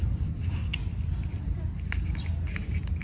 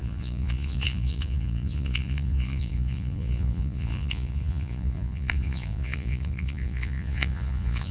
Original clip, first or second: first